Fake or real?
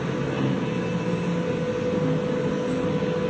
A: real